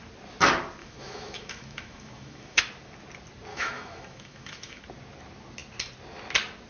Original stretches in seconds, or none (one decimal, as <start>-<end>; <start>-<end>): 0.0-0.8; 2.6-3.5; 4.8-6.7